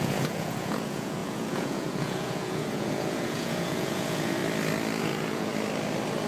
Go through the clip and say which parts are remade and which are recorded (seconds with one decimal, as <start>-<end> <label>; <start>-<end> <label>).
0.0-4.4 remade; 4.4-5.0 recorded; 5.0-5.5 remade; 5.5-6.3 recorded